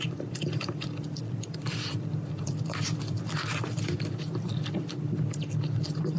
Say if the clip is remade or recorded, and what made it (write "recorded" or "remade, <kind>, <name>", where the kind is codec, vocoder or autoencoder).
remade, vocoder, BigVGAN v2